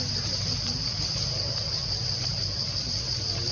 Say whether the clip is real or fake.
real